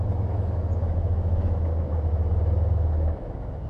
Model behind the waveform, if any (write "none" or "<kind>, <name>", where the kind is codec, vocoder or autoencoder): autoencoder, DAC-VAE